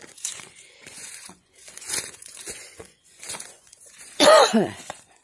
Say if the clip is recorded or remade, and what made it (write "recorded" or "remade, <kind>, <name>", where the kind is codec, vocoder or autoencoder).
remade, vocoder, Vocos